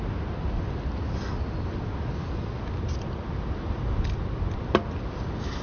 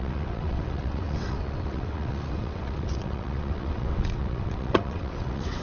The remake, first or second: second